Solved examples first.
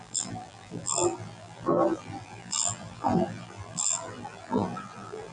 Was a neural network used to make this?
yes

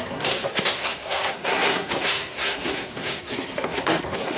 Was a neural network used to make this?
yes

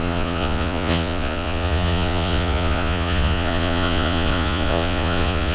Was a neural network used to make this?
yes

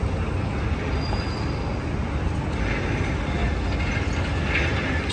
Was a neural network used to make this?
no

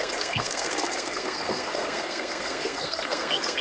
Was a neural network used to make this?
yes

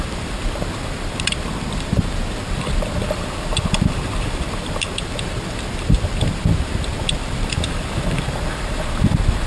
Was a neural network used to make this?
yes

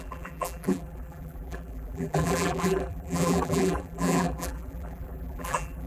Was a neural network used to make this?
yes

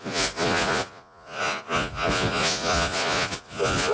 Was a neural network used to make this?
yes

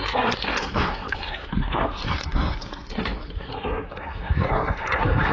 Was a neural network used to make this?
yes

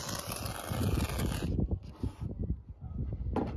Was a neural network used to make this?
no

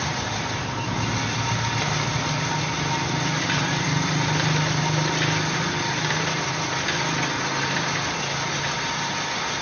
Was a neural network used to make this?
no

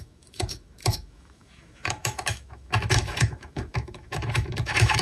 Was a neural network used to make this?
yes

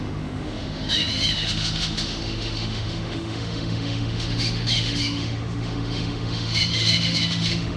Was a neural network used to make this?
yes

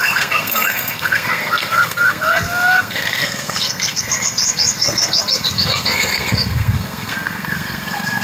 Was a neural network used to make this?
yes